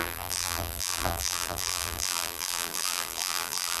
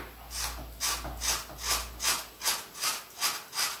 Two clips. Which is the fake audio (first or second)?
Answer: first